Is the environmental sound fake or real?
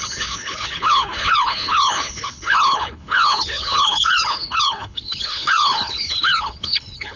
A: fake